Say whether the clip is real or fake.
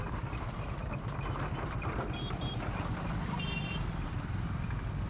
fake